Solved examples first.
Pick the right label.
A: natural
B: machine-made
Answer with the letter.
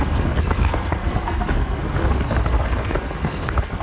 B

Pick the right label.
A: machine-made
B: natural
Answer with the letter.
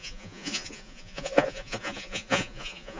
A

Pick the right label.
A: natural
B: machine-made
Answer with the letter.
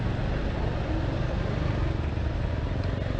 A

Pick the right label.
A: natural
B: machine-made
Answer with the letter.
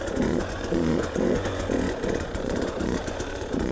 B